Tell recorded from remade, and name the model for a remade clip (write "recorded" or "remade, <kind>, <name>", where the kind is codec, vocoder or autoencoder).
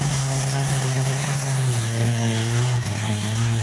remade, codec, SNAC